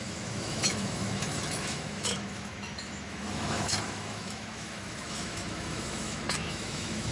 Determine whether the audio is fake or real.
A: fake